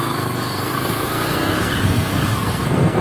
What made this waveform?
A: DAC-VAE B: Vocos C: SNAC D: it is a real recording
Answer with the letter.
C